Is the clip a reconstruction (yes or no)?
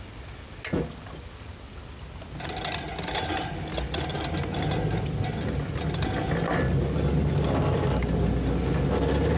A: no